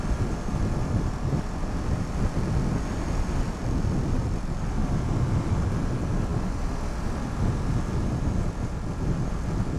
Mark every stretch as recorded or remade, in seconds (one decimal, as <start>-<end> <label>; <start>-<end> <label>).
0.0-0.8 recorded; 0.8-2.2 remade; 2.2-4.8 recorded; 4.8-5.8 remade; 5.8-6.3 recorded; 6.3-7.4 remade; 7.4-9.8 recorded